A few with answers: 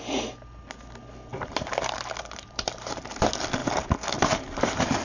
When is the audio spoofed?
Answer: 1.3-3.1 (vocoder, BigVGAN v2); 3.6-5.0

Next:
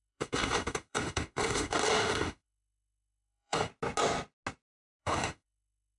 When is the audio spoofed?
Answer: 0.0-3.7 (autoencoder, DAC-VAE); 5.0-6.0

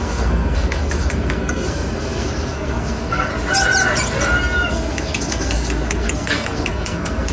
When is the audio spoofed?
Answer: 0.0-3.3 (codec, SNAC); 4.7-7.3

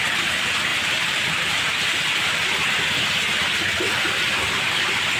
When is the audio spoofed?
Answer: 0.7-1.6 (vocoder, BigVGAN v2)

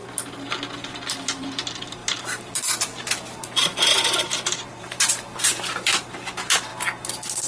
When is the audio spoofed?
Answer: 0.9-6.7 (vocoder, BigVGAN v2)

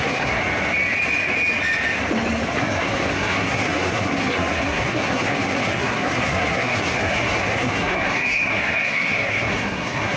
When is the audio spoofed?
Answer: 0.0-0.4 (codec, SNAC); 2.6-10.2

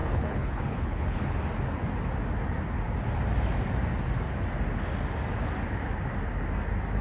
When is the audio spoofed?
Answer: 0.0-1.4 (codec, HILCodec)

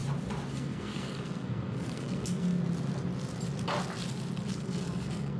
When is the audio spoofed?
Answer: 0.5-2.6 (codec, SNAC); 4.5-5.4